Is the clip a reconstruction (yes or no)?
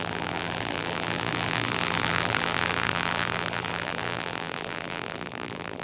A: yes